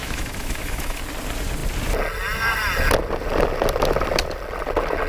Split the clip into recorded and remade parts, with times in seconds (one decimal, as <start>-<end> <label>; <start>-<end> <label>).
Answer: 0.0-1.0 remade; 1.0-5.1 recorded